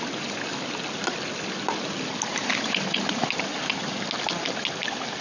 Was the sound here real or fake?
real